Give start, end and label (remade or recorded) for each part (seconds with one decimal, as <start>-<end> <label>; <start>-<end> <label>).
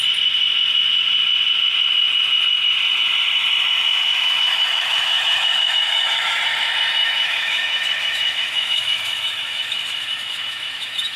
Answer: 0.0-3.9 recorded; 3.9-6.4 remade; 6.4-7.0 recorded; 7.0-11.2 remade